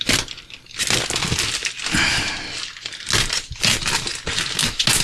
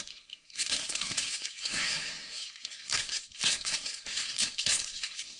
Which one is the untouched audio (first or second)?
first